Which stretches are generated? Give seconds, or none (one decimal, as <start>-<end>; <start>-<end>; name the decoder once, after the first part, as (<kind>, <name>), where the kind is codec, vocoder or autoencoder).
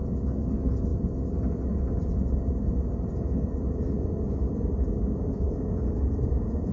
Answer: 0.9-4.3 (vocoder, BigVGAN v2)